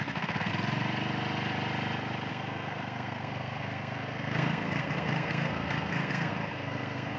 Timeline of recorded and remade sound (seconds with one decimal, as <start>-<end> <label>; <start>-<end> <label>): 0.0-0.5 remade; 0.5-2.3 recorded; 2.3-7.2 remade